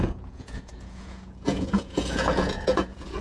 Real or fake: fake